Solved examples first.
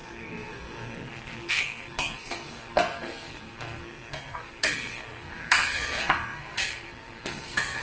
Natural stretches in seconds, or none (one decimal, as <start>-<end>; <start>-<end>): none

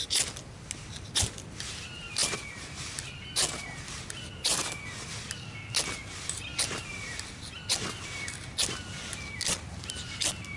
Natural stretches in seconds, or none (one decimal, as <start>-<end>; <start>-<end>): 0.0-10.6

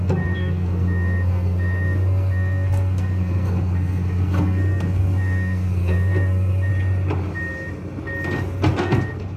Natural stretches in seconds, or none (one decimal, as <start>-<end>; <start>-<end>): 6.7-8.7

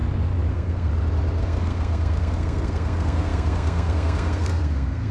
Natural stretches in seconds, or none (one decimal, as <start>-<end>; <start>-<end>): 0.0-0.5; 0.9-1.4

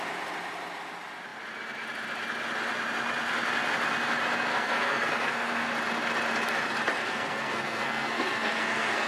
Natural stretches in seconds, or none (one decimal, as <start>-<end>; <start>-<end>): 0.0-4.5; 5.7-7.0

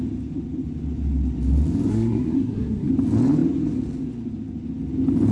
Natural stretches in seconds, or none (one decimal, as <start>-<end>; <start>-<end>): 0.0-1.9; 2.9-5.3